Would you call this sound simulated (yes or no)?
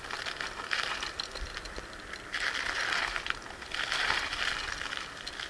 no